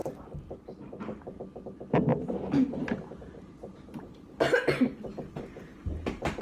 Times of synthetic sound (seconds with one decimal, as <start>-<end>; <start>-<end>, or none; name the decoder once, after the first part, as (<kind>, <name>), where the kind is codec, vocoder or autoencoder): 0.0-0.9 (vocoder, BigVGAN v2); 2.1-4.8; 5.8-6.4

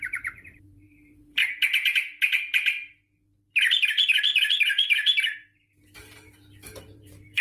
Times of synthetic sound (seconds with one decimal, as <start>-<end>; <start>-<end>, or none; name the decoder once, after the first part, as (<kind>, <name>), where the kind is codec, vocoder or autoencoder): 0.0-1.4 (vocoder, BigVGAN v2); 4.5-7.4

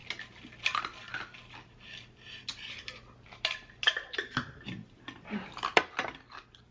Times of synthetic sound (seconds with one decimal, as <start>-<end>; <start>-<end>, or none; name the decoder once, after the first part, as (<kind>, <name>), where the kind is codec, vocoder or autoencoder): none

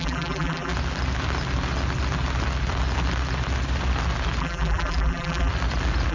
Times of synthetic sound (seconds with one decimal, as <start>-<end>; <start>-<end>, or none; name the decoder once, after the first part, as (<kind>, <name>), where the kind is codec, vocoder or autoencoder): 0.0-0.7 (vocoder, BigVGAN v2); 4.4-5.5

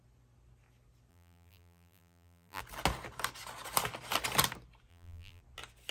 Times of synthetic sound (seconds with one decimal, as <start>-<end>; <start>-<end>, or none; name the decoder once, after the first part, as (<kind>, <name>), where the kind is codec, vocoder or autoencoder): 1.1-2.6 (vocoder, BigVGAN v2); 4.9-5.4

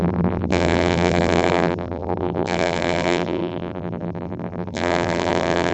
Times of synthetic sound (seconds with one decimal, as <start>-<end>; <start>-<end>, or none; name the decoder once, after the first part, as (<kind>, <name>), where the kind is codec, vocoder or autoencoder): 0.0-5.7 (vocoder, BigVGAN v2)